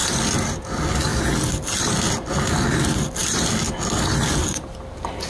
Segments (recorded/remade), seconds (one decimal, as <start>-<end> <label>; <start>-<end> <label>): 0.0-5.3 recorded